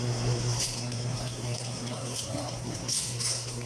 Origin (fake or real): fake